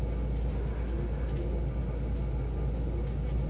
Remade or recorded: recorded